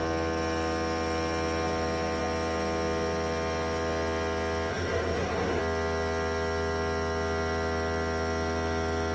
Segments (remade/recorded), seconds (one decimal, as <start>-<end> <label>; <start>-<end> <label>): 0.0-4.7 recorded; 4.7-5.6 remade; 5.6-9.1 recorded